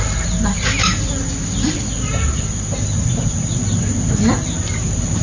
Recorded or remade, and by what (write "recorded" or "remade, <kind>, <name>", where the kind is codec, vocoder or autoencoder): recorded